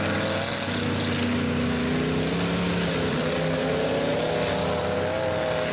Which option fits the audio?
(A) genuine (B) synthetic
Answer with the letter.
A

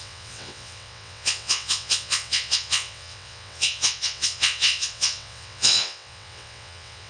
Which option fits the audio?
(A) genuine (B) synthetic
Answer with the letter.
B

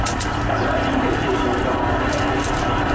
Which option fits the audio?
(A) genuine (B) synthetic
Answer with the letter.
A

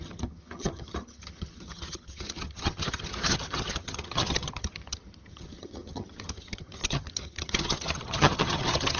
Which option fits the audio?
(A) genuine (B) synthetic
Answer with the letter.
B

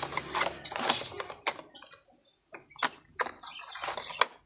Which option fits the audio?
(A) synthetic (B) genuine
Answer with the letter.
B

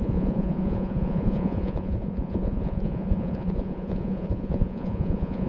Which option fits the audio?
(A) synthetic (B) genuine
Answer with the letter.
A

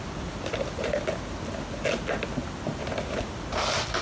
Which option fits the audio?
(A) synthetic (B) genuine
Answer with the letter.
B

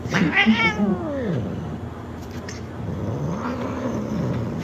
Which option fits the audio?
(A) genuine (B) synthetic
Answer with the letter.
A